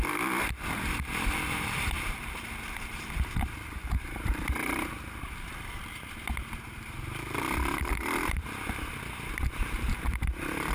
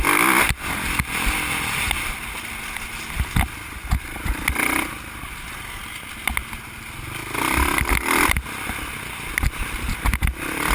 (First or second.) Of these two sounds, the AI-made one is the first